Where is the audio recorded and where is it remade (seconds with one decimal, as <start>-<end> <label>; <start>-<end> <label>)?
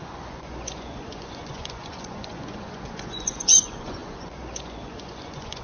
0.0-5.6 remade